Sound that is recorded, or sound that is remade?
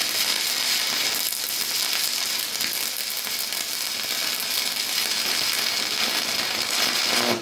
recorded